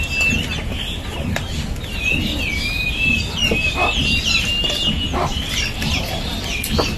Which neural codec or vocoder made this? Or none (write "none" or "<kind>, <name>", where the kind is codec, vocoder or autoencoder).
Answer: none